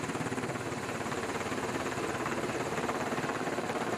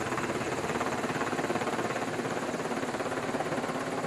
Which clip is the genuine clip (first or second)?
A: second